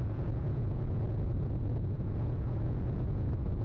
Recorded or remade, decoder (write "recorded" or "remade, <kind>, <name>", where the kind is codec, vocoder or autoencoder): remade, vocoder, Vocos